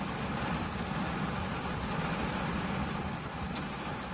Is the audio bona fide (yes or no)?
yes